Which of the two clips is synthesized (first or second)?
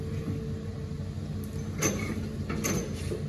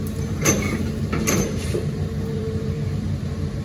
second